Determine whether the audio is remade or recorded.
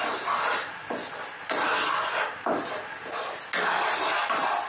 recorded